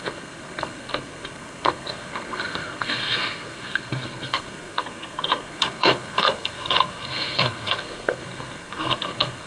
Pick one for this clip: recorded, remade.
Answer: remade